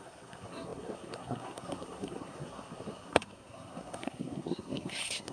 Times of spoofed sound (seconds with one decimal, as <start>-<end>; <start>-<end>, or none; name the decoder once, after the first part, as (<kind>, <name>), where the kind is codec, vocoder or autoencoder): 0.0-5.3 (codec, SNAC)